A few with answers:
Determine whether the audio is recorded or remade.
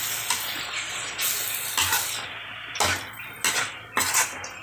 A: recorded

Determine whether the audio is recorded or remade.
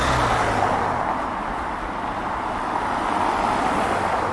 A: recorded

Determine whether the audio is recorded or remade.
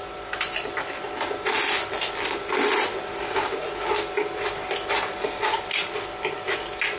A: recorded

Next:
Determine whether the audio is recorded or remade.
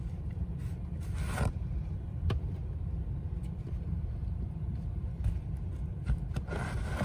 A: remade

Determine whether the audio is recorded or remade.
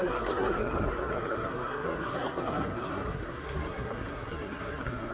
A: remade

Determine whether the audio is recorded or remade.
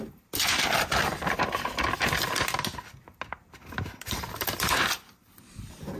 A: recorded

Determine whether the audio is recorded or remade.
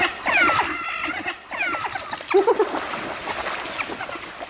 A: recorded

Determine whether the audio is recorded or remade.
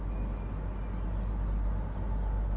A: recorded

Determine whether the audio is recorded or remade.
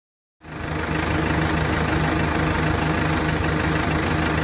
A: recorded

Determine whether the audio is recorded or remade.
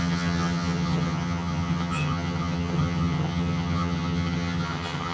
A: remade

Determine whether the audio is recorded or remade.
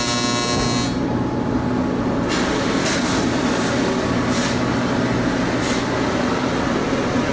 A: recorded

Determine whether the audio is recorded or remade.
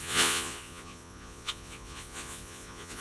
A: remade